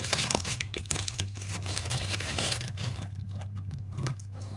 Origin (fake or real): fake